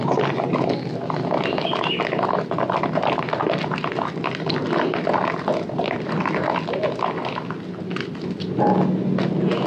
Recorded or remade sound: recorded